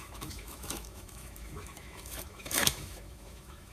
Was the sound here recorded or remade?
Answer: remade